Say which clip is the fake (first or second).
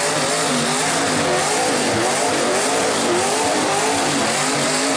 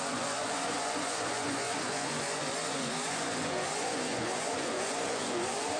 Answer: second